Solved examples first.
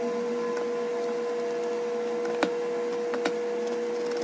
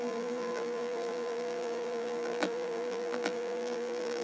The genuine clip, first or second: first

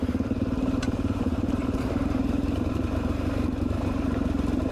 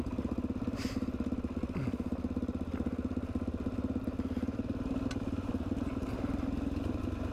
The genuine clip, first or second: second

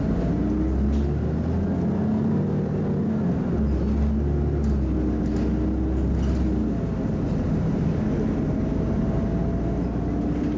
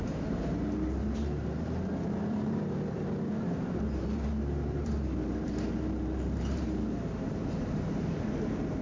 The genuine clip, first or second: first